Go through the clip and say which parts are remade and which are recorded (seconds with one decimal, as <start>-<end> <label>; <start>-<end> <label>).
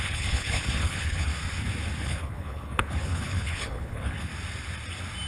0.0-1.3 remade; 1.3-2.0 recorded; 2.0-4.3 remade; 4.3-5.3 recorded